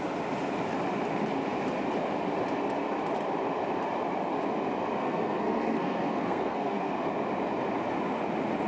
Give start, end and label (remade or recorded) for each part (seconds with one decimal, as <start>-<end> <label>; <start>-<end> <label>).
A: 0.0-5.0 recorded; 5.0-6.9 remade; 6.9-8.7 recorded